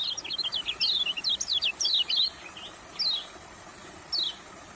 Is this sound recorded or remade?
recorded